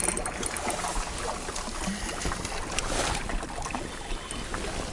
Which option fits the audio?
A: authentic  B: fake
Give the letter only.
A